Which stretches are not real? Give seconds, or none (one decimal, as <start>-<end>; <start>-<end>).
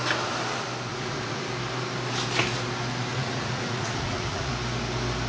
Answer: 0.9-1.4; 3.1-4.5